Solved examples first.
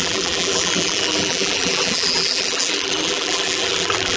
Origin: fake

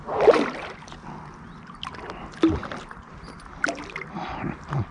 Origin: real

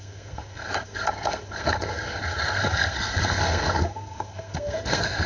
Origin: fake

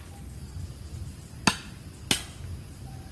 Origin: real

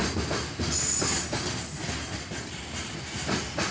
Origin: real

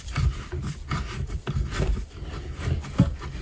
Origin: real